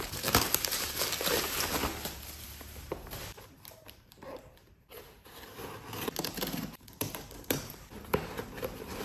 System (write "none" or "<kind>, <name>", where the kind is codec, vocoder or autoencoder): vocoder, BigVGAN v2